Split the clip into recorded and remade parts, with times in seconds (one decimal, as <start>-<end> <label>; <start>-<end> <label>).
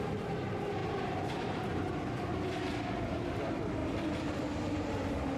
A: 0.0-0.8 recorded; 0.8-1.9 remade; 1.9-5.4 recorded